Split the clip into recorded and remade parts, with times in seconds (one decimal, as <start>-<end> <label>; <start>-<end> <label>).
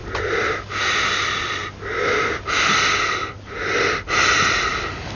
0.0-5.2 recorded